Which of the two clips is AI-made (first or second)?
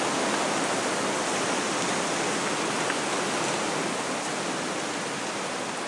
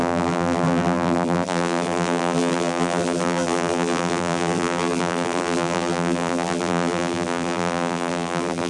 second